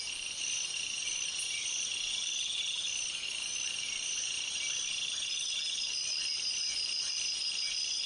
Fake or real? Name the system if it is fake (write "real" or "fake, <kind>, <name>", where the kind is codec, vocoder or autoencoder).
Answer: real